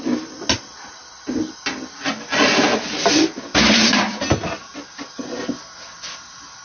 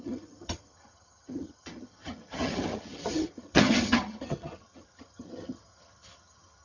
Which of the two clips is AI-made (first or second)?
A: second